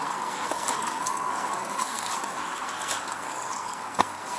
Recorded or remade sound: remade